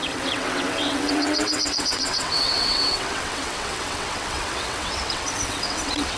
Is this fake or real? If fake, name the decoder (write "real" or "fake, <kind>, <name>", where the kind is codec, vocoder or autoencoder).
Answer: fake, vocoder, WaveNeXt